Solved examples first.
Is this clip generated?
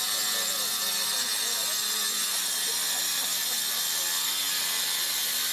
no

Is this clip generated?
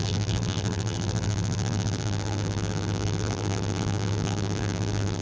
yes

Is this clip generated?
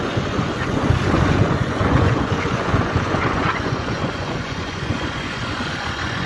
yes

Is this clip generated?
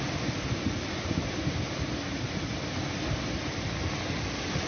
no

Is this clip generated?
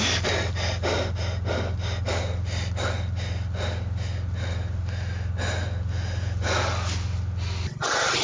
no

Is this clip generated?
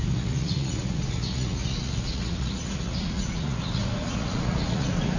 yes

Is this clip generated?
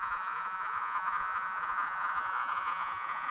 yes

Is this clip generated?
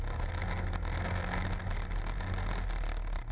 no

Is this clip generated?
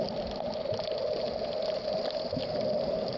no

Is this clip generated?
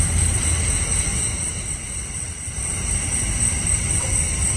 no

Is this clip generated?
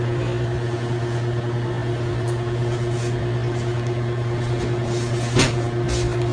no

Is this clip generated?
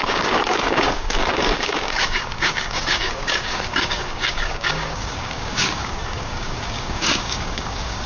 yes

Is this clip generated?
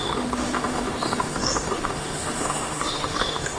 yes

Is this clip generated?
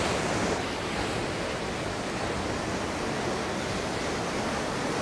no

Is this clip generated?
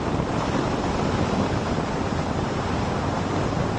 no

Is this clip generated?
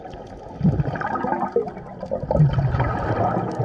no